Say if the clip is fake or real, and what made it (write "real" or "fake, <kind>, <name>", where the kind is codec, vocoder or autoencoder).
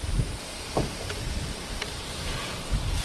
real